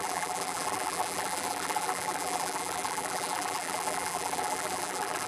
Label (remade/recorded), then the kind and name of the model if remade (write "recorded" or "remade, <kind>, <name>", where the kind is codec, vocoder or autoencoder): remade, vocoder, BigVGAN v2